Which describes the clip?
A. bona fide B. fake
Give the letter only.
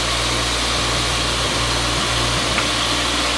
A